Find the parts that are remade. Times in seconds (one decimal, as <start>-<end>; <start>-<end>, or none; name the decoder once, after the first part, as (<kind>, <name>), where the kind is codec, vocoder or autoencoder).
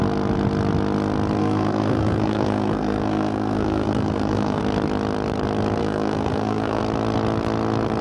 1.4-4.6 (codec, SNAC); 5.8-6.8